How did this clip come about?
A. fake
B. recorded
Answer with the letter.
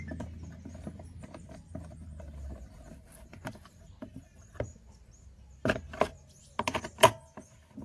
B